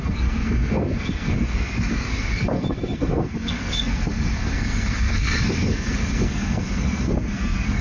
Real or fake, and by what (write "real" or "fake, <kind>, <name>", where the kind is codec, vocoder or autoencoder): fake, codec, SNAC